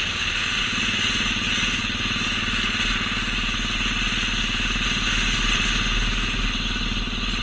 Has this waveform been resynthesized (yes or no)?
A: no